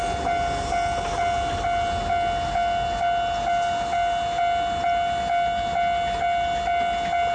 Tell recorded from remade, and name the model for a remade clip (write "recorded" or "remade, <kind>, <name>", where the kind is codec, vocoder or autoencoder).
recorded